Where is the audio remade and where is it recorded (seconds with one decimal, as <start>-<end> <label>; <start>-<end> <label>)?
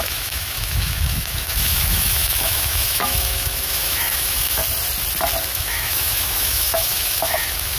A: 0.0-4.6 remade; 4.6-5.4 recorded; 5.4-7.8 remade